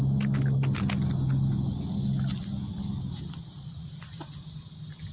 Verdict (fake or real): real